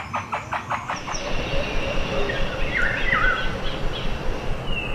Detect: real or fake real